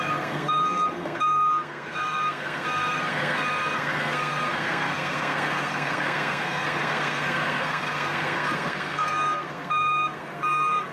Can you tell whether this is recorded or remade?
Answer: remade